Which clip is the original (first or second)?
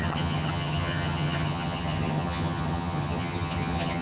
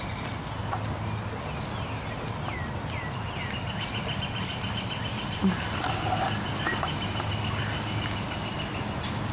second